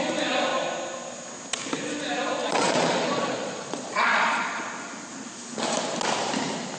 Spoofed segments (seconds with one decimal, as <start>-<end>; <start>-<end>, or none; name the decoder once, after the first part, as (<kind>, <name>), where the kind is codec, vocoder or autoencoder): 2.4-4.6 (vocoder, Vocos)